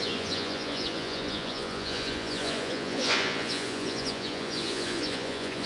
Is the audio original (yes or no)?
no